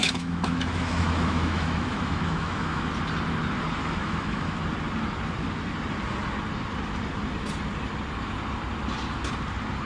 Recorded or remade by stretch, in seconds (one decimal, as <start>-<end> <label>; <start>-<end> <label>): 0.0-2.9 remade; 2.9-3.8 recorded; 3.8-4.6 remade; 4.6-9.9 recorded